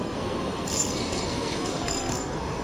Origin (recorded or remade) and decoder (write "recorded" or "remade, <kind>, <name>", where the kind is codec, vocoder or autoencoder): remade, codec, SNAC